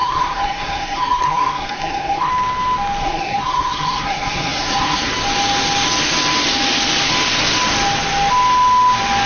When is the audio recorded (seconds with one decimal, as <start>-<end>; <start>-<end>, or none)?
2.3-3.0; 5.1-9.3